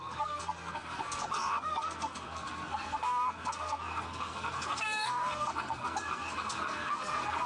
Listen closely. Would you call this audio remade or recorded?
remade